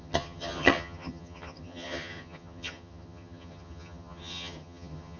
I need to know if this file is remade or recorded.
remade